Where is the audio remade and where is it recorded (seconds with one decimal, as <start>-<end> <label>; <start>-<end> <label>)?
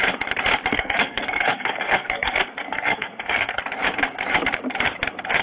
0.0-0.7 recorded; 0.7-3.6 remade; 3.6-5.4 recorded